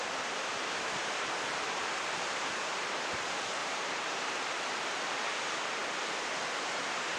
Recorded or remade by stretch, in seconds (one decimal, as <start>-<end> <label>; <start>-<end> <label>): 0.0-3.6 recorded; 3.6-4.6 remade; 4.6-7.2 recorded